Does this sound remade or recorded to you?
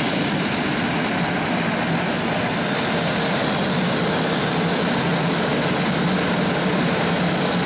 recorded